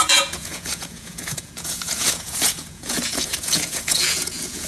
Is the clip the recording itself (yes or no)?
no